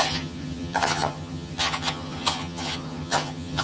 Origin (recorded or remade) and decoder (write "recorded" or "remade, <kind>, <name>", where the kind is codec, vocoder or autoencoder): remade, vocoder, HiFi-GAN